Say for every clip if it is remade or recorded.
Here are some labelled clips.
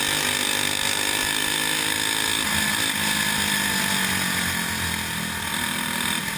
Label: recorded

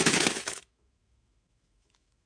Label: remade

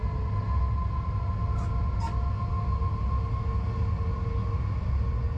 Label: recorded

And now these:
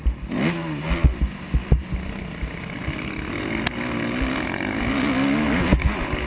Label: recorded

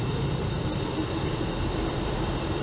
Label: remade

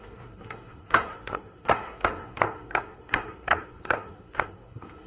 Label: remade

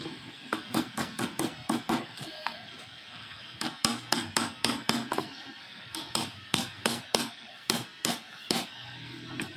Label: remade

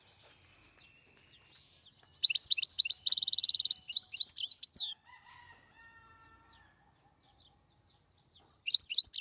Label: recorded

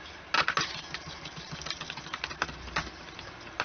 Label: recorded